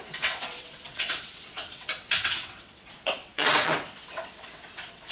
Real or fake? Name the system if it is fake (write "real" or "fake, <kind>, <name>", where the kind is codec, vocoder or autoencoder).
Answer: fake, vocoder, WaveNeXt